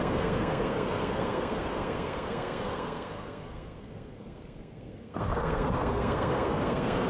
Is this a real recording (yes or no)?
no